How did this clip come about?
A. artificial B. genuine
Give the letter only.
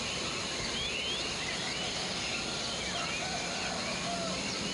B